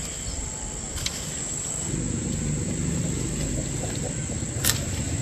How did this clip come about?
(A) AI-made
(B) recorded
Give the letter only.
B